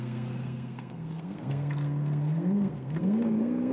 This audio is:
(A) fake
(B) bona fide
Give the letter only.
A